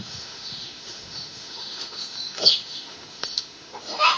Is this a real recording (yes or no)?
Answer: no